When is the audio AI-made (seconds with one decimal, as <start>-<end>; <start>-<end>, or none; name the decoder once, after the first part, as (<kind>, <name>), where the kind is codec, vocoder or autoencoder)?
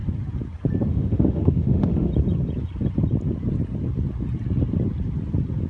0.9-2.1 (autoencoder, DAC-VAE)